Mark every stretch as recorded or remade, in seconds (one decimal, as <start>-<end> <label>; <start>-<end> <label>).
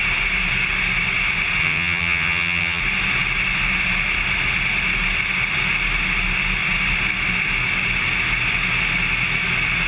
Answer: 0.0-1.6 recorded; 1.6-2.8 remade; 2.8-9.9 recorded